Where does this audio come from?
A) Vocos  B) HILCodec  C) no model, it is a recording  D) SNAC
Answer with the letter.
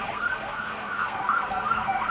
D